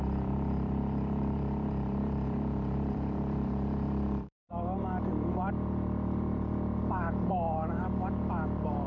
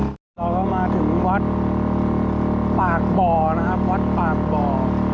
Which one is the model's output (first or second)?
first